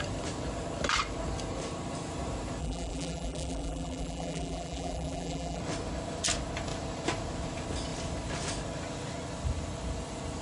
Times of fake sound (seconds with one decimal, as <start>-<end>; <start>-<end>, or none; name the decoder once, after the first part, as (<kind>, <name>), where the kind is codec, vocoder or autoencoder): 2.6-5.6 (vocoder, BigVGAN v2)